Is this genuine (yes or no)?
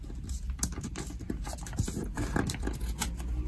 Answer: no